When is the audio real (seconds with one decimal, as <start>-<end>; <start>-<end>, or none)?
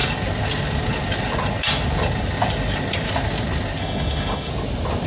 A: 0.0-3.8; 4.5-5.1